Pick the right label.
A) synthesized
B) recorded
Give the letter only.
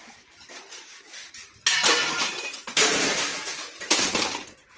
A